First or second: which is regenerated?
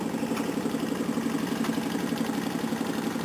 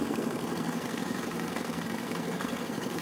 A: second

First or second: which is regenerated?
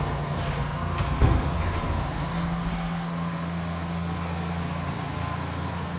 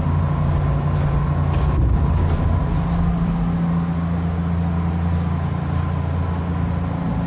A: first